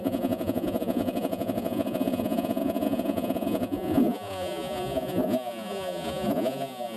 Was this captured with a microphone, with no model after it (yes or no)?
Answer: no